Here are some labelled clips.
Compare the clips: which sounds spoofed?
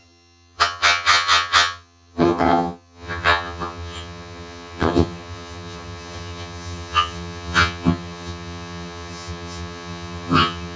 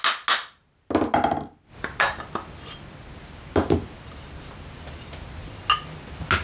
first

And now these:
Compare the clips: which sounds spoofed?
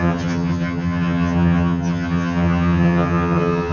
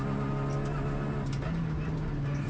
first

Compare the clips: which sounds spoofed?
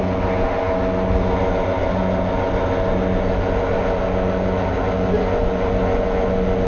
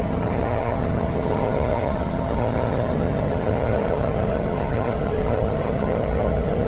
second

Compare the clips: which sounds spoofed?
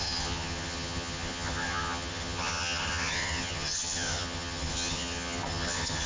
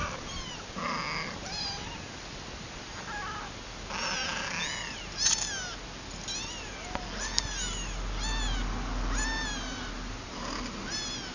first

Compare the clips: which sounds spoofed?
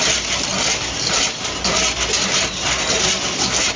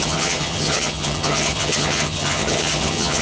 second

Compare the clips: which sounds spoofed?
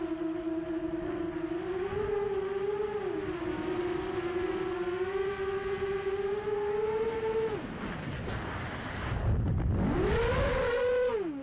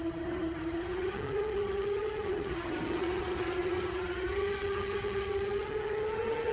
second